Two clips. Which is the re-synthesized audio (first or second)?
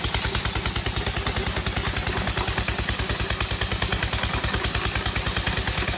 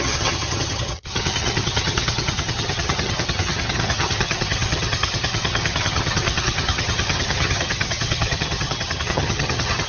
second